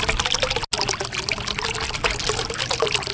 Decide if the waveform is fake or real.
real